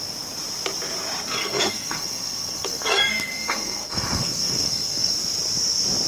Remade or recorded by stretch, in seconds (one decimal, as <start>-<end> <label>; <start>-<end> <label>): 0.0-1.4 recorded; 1.4-5.1 remade; 5.1-6.1 recorded